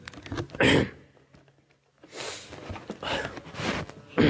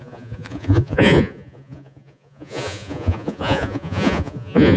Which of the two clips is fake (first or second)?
second